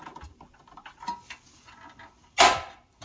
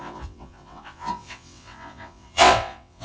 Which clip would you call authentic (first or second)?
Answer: first